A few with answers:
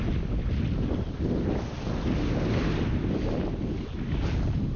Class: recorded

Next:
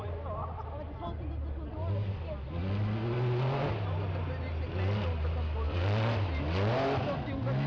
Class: recorded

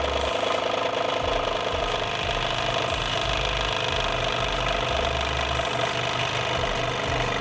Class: recorded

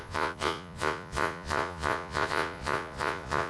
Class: remade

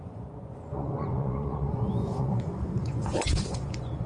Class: remade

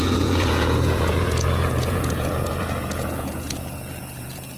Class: remade